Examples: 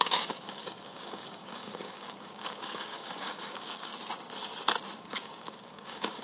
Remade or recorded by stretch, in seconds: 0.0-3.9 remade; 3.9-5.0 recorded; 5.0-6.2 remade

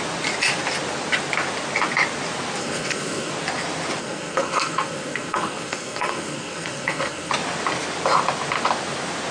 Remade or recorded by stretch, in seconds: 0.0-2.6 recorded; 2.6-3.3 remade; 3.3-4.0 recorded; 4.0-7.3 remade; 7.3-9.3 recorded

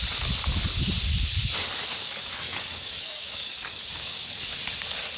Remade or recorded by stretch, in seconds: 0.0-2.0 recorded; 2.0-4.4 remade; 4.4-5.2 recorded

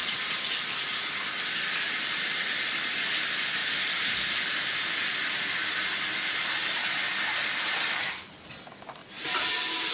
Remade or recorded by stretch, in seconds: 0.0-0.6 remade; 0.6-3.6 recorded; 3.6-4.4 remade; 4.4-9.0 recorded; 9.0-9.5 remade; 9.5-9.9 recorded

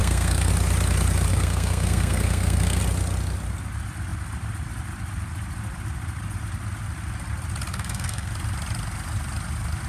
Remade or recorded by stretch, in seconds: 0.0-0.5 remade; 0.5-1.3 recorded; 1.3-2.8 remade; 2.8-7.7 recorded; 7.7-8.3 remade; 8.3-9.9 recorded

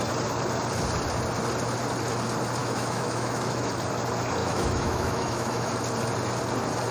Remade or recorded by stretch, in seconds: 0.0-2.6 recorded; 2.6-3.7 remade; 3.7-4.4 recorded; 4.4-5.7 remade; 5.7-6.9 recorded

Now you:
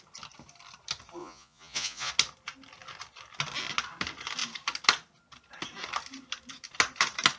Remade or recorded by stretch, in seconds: 0.0-1.2 recorded; 1.2-2.1 remade; 2.1-7.4 recorded

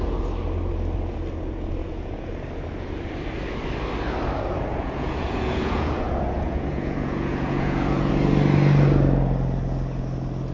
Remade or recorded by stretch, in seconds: 0.0-1.8 recorded; 1.8-2.3 remade; 2.3-4.7 recorded; 4.7-8.1 remade; 8.1-10.5 recorded